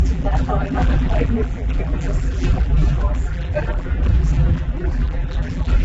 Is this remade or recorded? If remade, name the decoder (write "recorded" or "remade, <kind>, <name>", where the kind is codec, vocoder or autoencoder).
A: remade, vocoder, BigVGAN v2